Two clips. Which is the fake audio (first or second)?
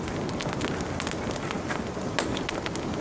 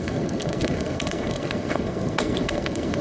second